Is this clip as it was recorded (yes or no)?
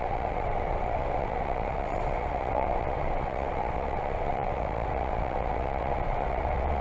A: no